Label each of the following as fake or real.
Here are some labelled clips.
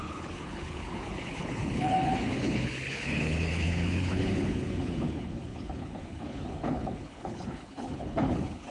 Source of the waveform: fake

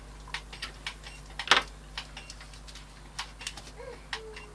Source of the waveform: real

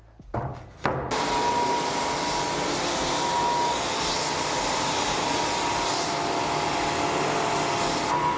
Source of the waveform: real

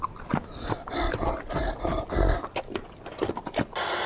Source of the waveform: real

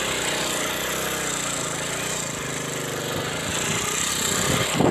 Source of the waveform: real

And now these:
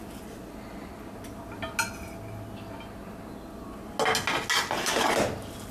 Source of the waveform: real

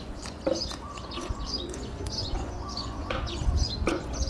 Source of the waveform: fake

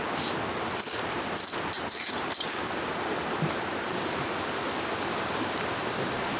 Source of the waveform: real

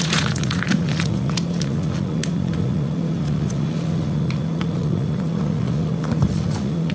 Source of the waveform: fake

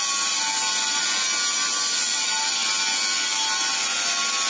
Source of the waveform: real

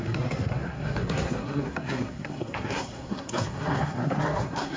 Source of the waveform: fake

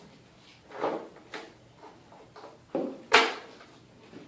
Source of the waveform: real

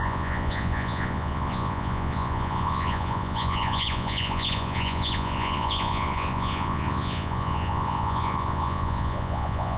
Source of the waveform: fake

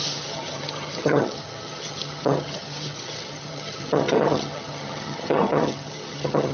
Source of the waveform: fake